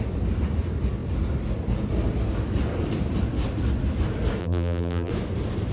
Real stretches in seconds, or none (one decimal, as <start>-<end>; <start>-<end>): 0.0-4.4; 5.1-5.7